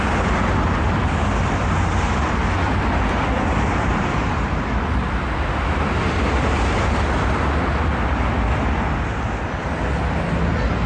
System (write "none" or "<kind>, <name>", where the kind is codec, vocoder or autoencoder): none